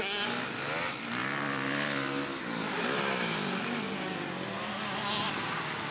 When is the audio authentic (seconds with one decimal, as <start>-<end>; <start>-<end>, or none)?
0.0-5.9